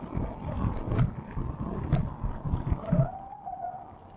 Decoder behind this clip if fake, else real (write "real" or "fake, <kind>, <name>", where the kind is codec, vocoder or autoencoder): real